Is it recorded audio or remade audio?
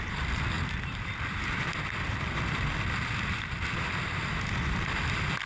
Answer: remade